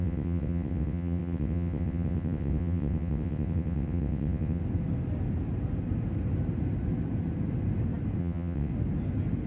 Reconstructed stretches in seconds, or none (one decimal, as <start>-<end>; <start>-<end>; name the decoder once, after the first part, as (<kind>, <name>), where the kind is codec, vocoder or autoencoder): 0.0-4.6 (vocoder, WaveNeXt); 8.2-8.7